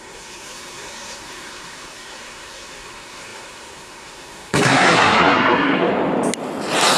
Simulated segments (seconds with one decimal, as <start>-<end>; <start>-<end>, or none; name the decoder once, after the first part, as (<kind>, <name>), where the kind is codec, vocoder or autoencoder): 0.0-5.9 (codec, SNAC)